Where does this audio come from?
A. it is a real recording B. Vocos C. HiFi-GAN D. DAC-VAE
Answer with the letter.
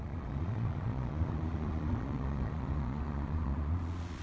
B